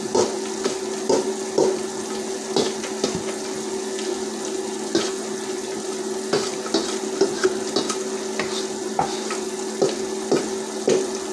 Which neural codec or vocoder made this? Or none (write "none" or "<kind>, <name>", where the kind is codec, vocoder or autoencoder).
none